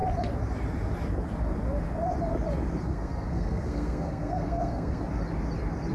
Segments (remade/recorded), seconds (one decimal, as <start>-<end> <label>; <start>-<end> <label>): 0.0-2.9 recorded; 2.9-5.0 remade; 5.0-5.9 recorded